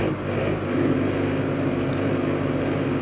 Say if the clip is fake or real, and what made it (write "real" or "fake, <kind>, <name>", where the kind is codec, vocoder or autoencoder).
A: real